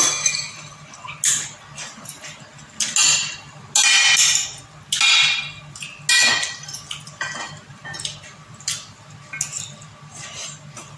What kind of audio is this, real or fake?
real